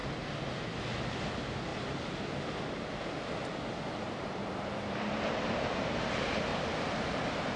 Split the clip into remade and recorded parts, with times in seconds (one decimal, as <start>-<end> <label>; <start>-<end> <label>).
0.0-1.2 recorded; 1.2-1.7 remade; 1.7-4.2 recorded; 4.2-6.5 remade; 6.5-7.1 recorded; 7.1-7.6 remade